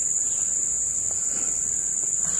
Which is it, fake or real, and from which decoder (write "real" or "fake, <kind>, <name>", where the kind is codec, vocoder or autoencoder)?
real